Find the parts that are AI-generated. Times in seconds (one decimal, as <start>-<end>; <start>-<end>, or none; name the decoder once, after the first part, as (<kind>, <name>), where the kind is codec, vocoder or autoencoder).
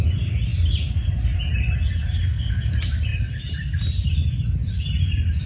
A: 2.2-2.7 (codec, SNAC)